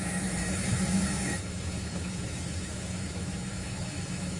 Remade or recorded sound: remade